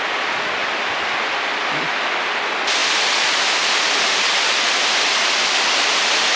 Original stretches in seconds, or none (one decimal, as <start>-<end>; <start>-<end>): 0.0-0.6; 2.1-2.8; 4.8-6.4